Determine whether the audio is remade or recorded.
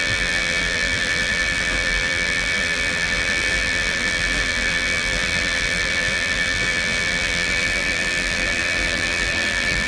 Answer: remade